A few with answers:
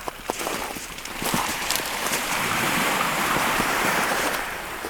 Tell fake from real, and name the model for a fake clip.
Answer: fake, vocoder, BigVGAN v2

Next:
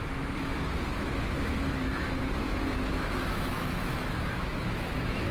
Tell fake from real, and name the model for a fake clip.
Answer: fake, autoencoder, DAC-VAE